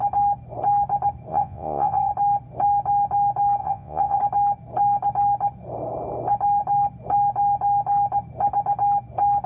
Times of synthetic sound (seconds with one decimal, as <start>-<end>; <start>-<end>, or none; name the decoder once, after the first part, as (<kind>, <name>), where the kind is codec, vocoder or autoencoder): 1.3-2.1 (vocoder, Vocos); 3.6-4.2